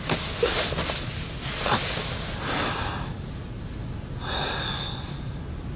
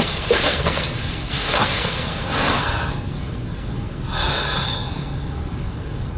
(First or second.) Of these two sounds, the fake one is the second